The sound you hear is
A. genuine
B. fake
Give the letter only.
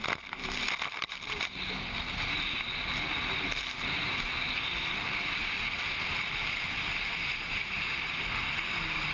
A